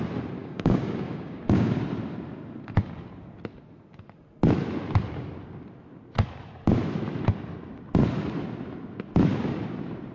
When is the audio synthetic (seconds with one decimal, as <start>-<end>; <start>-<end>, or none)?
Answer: 0.4-1.8